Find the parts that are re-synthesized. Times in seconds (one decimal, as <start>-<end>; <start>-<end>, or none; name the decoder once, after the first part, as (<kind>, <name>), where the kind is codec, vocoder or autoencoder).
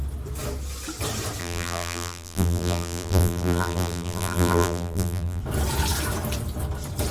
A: 1.4-5.4 (vocoder, BigVGAN v2)